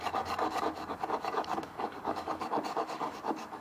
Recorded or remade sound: remade